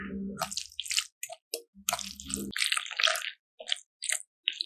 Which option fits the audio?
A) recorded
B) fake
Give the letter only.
A